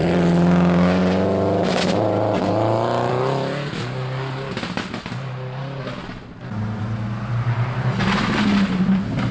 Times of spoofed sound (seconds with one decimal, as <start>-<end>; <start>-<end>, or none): none